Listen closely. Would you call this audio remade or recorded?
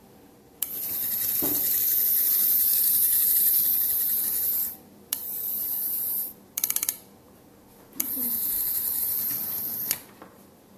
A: remade